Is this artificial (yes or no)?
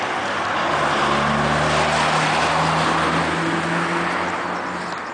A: no